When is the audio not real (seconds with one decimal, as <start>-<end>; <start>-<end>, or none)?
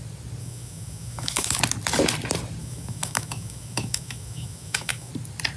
0.4-1.6; 2.6-5.1